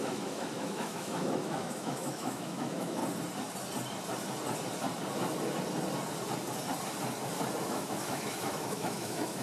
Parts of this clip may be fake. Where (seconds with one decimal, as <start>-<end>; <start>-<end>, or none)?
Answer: 0.0-3.0; 7.6-9.4